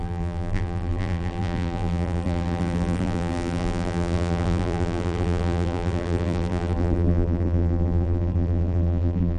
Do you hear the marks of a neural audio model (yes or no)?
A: yes